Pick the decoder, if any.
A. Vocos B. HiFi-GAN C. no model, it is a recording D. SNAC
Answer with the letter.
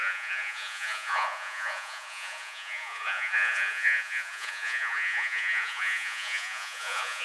A